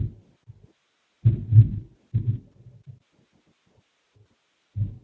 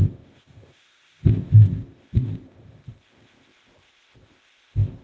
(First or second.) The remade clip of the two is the second